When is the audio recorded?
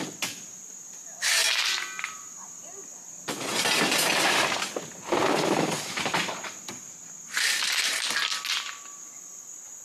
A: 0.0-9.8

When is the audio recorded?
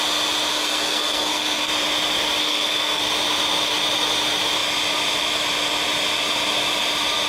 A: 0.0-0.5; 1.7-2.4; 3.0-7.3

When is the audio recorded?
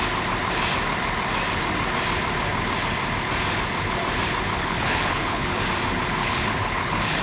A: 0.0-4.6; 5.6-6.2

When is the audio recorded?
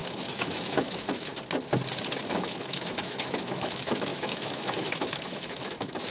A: 1.3-2.2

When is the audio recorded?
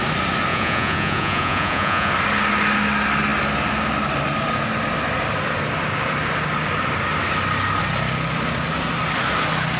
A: 0.0-0.5; 2.1-9.8